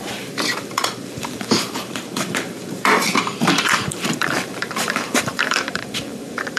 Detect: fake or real fake